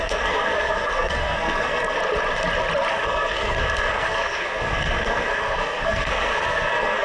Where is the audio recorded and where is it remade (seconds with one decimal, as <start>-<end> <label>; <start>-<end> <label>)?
0.0-2.0 remade; 2.0-2.9 recorded; 2.9-7.0 remade